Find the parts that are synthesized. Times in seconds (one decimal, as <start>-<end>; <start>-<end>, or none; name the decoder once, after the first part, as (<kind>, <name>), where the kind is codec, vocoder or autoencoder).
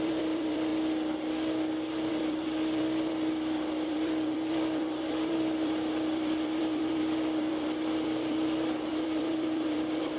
0.0-0.7 (vocoder, BigVGAN v2); 2.1-10.2